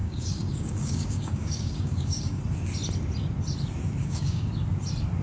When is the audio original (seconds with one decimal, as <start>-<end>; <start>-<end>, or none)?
2.4-4.0; 4.5-5.2